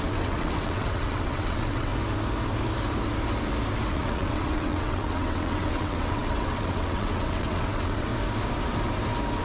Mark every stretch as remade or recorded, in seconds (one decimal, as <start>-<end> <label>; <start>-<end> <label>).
0.0-1.9 remade; 1.9-3.9 recorded; 3.9-8.1 remade; 8.1-9.4 recorded